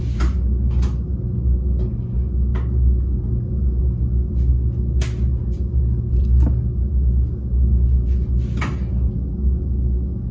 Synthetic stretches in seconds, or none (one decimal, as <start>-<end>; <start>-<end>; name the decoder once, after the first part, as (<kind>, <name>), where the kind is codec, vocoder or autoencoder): none